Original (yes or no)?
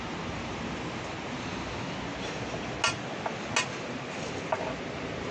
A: yes